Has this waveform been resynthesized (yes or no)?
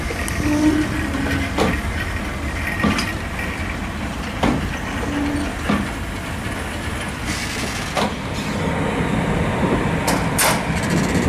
no